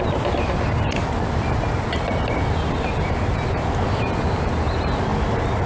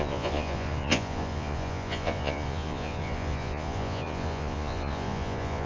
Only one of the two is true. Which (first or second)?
first